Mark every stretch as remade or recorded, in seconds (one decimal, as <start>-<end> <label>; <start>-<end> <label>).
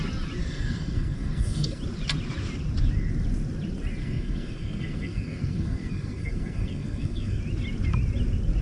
0.0-0.4 recorded; 0.4-1.8 remade; 1.8-4.0 recorded; 4.0-7.4 remade; 7.4-8.6 recorded